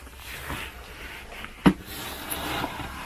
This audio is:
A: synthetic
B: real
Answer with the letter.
B